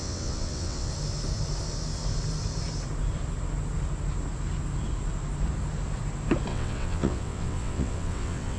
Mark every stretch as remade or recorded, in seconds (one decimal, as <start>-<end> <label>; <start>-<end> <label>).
0.0-0.9 remade; 0.9-6.5 recorded; 6.5-8.6 remade